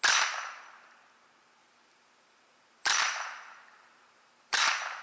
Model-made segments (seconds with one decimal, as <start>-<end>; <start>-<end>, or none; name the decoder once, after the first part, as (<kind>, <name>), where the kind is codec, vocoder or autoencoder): 1.6-4.6 (vocoder, BigVGAN v2)